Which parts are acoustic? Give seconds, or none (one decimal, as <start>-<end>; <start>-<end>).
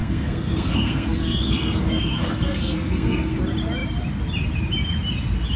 3.4-5.6